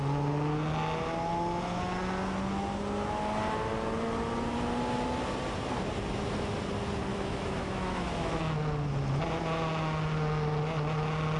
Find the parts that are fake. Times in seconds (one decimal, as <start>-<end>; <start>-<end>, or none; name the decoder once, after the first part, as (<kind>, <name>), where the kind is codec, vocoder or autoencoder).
7.1-8.4 (autoencoder, DAC-VAE)